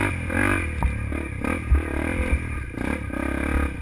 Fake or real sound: real